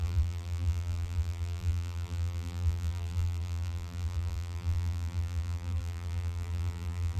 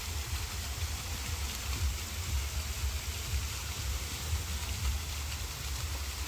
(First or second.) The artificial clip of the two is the first